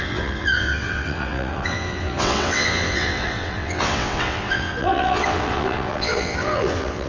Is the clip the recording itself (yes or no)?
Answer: no